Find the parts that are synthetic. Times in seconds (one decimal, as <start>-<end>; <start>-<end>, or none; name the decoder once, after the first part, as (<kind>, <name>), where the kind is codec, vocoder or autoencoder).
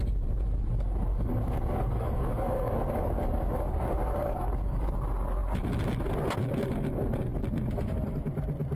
1.1-4.9 (codec, DAC)